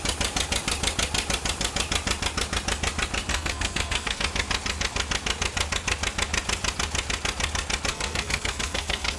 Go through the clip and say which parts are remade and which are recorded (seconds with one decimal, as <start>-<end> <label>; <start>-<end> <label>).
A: 0.0-3.3 recorded; 3.3-4.2 remade; 4.2-7.9 recorded; 7.9-9.2 remade